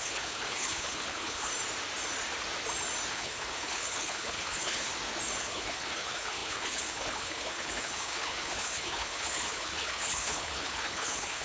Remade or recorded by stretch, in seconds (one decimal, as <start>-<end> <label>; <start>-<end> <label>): 0.0-1.5 remade; 1.5-3.1 recorded; 3.1-4.9 remade; 4.9-5.4 recorded; 5.4-11.4 remade